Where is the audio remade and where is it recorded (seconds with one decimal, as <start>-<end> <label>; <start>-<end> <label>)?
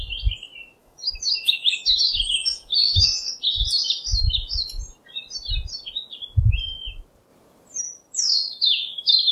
0.0-0.8 recorded; 0.8-3.3 remade; 3.3-8.3 recorded; 8.3-9.3 remade